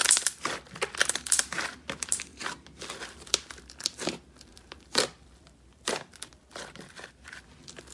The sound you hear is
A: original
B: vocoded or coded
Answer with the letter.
A